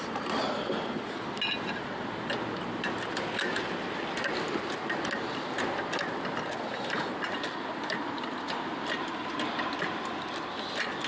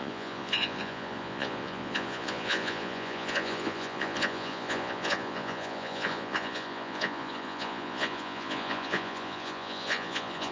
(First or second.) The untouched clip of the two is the first